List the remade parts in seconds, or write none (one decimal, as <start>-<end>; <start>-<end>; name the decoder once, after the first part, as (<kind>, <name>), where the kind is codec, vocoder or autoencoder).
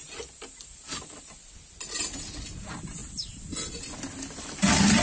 none